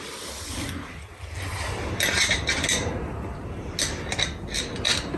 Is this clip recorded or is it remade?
recorded